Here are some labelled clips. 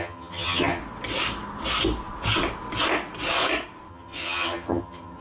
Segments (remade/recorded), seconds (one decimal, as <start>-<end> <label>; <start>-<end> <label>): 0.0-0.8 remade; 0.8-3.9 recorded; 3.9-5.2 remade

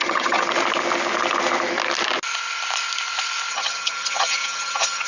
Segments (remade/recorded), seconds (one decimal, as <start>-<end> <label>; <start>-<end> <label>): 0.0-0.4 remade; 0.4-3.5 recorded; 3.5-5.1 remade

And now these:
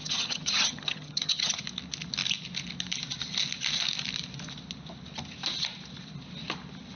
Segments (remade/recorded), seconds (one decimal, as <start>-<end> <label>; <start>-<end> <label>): 0.0-1.6 remade; 1.6-7.0 recorded